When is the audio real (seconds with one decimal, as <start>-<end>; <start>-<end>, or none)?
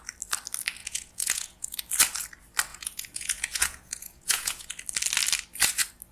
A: 0.0-0.8; 1.8-2.7; 4.7-6.1